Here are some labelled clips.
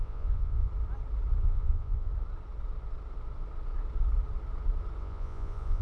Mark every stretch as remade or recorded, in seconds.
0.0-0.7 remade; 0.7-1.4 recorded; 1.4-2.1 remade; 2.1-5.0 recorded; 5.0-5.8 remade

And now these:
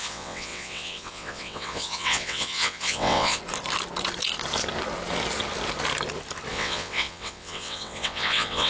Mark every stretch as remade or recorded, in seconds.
0.0-3.4 remade; 3.4-6.5 recorded; 6.5-8.7 remade

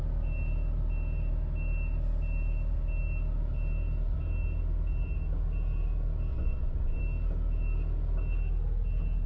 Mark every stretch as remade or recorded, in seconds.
0.0-6.3 recorded; 6.3-7.0 remade; 7.0-9.3 recorded

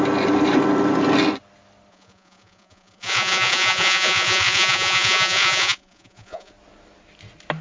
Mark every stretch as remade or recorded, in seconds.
0.0-1.9 recorded; 1.9-6.5 remade; 6.5-7.6 recorded

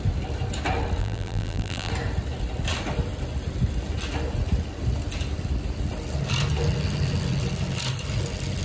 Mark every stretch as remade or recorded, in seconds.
0.0-1.0 recorded; 1.0-1.9 remade; 1.9-8.6 recorded

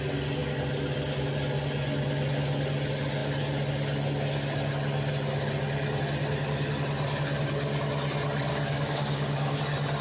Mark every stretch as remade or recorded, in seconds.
0.0-8.5 recorded; 8.5-9.6 remade; 9.6-10.0 recorded